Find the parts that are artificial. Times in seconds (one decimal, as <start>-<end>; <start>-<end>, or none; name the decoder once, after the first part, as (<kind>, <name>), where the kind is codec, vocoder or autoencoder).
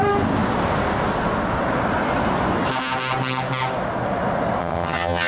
4.6-5.3 (vocoder, HiFi-GAN)